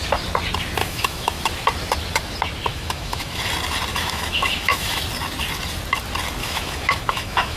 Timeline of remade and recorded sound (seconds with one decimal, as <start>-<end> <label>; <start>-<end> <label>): 0.0-0.8 recorded; 0.8-1.4 remade; 1.4-2.7 recorded; 2.7-3.4 remade; 3.4-3.9 recorded; 3.9-5.0 remade; 5.0-6.4 recorded; 6.4-7.6 remade